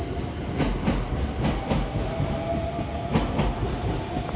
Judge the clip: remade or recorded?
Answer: recorded